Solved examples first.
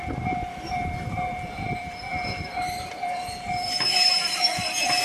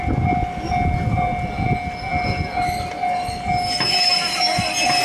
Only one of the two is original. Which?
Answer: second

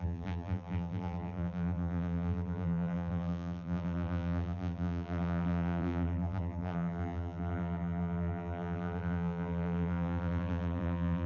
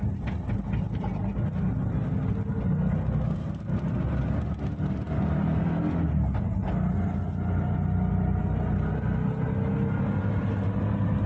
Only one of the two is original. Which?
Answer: second